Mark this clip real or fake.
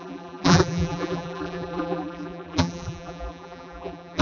fake